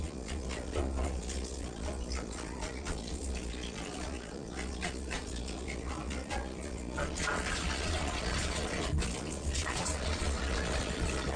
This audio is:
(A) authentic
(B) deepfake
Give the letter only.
B